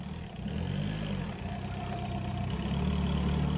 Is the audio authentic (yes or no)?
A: yes